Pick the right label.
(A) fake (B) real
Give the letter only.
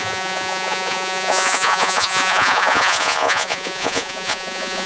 A